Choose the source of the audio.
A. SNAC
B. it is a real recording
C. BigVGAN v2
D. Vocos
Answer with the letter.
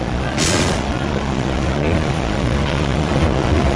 D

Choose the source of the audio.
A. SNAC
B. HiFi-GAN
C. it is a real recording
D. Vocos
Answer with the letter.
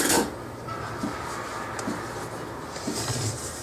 C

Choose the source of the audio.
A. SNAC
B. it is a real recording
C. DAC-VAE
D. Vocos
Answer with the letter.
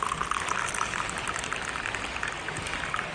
B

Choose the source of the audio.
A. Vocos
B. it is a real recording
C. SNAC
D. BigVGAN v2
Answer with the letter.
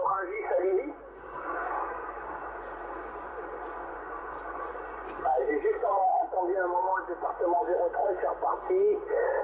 A